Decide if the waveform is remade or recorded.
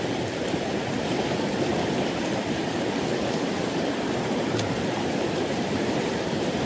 remade